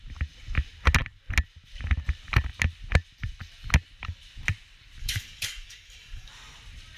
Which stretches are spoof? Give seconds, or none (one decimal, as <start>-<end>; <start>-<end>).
5.0-6.3